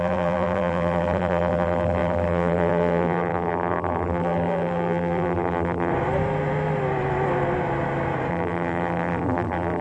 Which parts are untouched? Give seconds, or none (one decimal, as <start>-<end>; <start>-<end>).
5.9-8.3